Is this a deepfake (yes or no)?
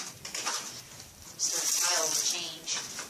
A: no